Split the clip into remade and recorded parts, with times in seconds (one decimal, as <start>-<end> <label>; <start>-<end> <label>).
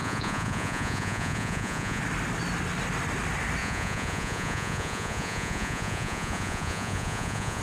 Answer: 0.0-2.0 remade; 2.0-3.6 recorded; 3.6-7.6 remade